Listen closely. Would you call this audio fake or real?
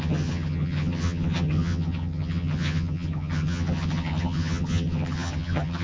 fake